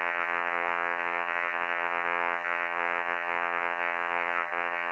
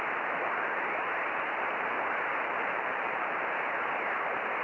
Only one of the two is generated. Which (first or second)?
first